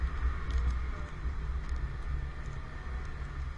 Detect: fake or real real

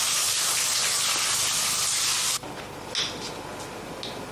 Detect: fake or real real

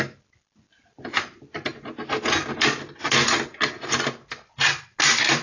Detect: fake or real real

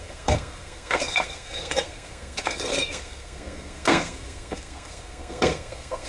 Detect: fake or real fake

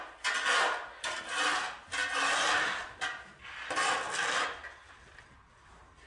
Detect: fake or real real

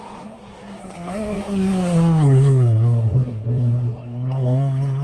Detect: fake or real fake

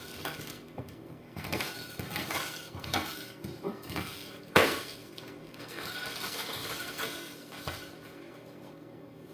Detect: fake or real fake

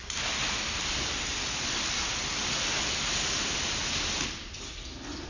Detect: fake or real real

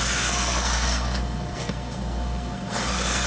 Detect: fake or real fake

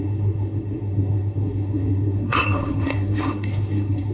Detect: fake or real fake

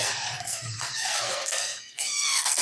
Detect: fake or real fake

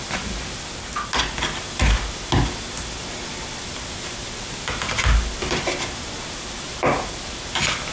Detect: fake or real real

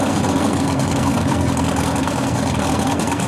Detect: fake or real fake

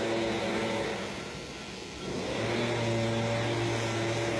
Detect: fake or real real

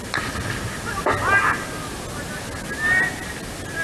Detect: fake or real real